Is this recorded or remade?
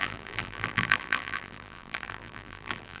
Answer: remade